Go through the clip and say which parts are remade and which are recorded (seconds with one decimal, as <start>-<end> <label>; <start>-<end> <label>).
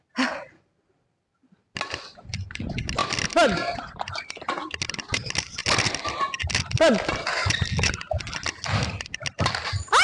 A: 0.0-10.0 recorded